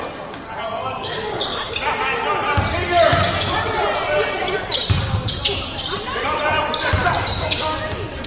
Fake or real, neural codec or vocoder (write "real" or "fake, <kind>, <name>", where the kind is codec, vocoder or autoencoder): real